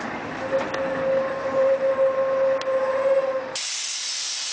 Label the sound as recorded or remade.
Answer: recorded